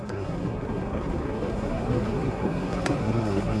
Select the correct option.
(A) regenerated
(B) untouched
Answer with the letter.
A